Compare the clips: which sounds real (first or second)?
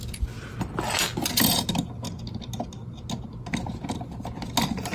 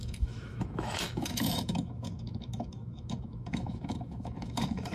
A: first